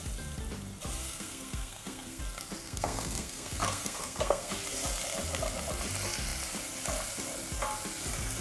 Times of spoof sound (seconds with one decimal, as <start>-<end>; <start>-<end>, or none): 1.0-2.2; 2.6-4.5